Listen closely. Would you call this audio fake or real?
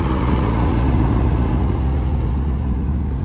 fake